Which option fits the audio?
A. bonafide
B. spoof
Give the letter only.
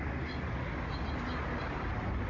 A